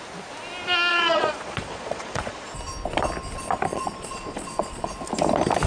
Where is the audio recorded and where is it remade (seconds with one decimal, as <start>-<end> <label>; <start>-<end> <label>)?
0.0-0.9 recorded; 0.9-2.5 remade; 2.5-3.7 recorded; 3.7-4.9 remade; 4.9-5.7 recorded